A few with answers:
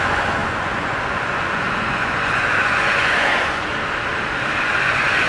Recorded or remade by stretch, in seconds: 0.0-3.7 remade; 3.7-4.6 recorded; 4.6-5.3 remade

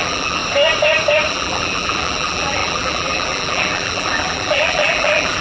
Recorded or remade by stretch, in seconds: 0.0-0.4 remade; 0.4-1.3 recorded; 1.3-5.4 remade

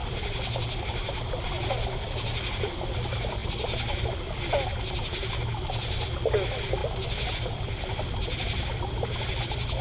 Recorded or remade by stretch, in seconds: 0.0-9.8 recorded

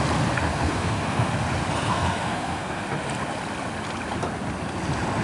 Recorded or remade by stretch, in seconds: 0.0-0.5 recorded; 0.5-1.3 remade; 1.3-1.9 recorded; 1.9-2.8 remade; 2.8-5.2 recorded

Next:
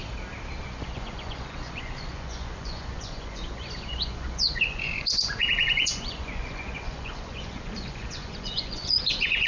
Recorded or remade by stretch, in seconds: 0.0-0.6 recorded; 0.6-9.5 remade